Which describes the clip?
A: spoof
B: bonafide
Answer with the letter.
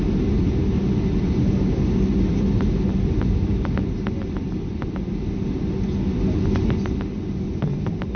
B